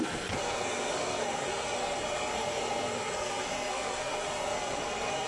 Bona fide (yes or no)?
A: no